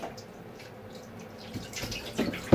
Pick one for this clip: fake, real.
real